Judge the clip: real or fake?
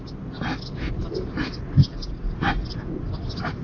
real